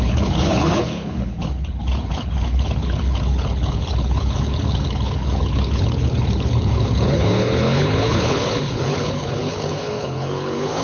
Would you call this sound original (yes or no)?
no